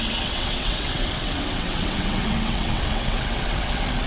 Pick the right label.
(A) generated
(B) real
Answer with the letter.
A